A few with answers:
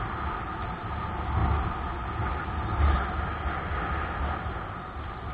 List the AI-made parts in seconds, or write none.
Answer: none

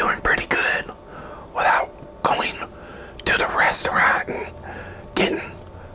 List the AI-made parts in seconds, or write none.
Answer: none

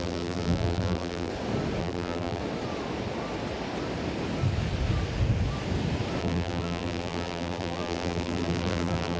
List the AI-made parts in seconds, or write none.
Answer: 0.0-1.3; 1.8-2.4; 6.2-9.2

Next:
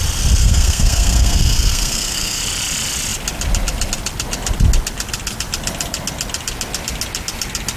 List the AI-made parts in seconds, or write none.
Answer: 0.4-2.4

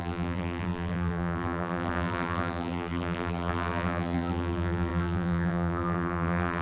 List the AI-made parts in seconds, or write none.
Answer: 0.0-6.6